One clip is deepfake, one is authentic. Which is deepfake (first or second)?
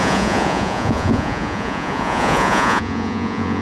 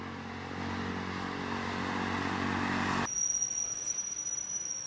first